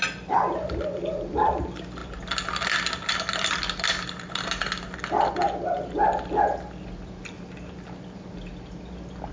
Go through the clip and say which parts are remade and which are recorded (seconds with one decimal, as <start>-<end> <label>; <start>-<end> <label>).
0.0-9.3 recorded